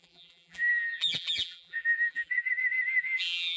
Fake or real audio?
fake